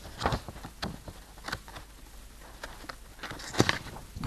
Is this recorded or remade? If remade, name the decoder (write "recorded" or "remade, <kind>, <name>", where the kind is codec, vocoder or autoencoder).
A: recorded